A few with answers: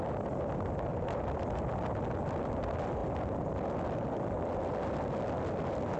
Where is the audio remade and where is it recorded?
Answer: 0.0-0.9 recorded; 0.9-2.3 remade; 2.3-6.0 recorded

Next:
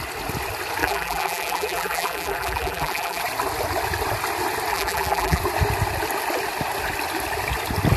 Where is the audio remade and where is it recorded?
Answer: 0.0-0.8 recorded; 0.8-3.2 remade; 3.2-4.7 recorded; 4.7-5.4 remade; 5.4-8.0 recorded

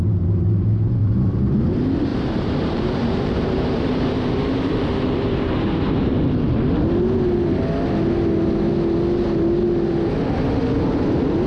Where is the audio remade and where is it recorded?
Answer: 0.0-1.0 recorded; 1.0-1.5 remade; 1.5-2.1 recorded; 2.1-6.1 remade; 6.1-11.5 recorded

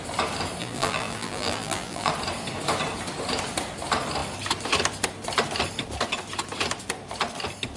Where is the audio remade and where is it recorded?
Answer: 0.0-0.6 recorded; 0.6-2.1 remade; 2.1-7.8 recorded

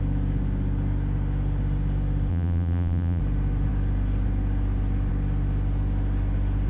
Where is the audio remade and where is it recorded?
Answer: 0.0-2.3 recorded; 2.3-3.2 remade; 3.2-6.7 recorded

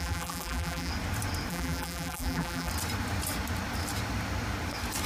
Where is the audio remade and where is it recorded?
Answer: 0.0-0.9 remade; 0.9-1.5 recorded; 1.5-2.7 remade; 2.7-5.1 recorded